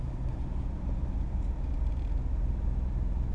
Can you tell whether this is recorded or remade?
recorded